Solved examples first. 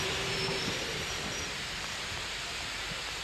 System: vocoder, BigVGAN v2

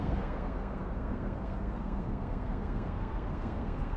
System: codec, SNAC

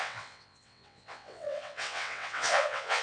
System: vocoder, WaveNeXt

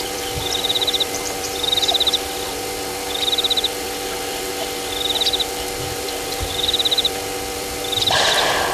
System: vocoder, BigVGAN v2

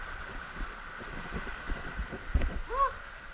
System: vocoder, BigVGAN v2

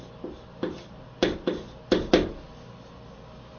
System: none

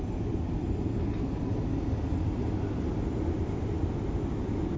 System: none